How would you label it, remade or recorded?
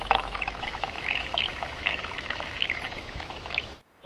remade